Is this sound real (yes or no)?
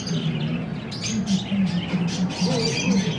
yes